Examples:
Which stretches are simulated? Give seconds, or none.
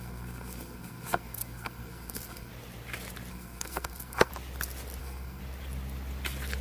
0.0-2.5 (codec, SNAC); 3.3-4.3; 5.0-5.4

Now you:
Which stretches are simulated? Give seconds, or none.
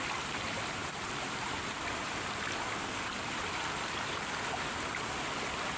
none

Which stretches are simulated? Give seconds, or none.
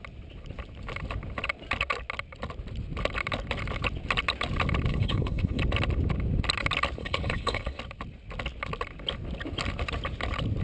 4.9-5.6 (codec, HILCodec); 7.0-7.8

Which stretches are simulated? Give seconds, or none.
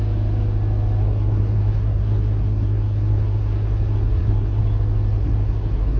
1.0-4.6 (codec, SNAC); 5.2-6.0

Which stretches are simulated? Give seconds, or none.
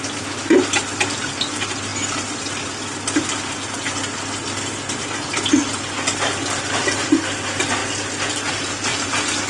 none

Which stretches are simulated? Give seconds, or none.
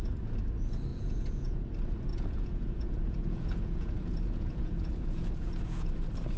0.9-1.7 (vocoder, Vocos); 2.1-5.9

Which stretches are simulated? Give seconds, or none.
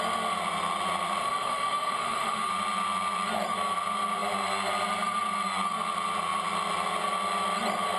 1.2-2.5 (autoencoder, DAC-VAE)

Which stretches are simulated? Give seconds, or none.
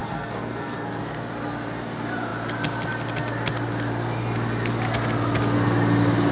0.0-1.0 (codec, SNAC)